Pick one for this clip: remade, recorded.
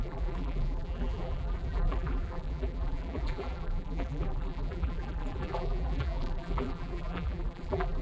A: remade